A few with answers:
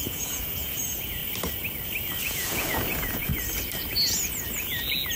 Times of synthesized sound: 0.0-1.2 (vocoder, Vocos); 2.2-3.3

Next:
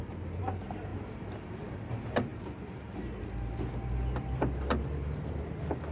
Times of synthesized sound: none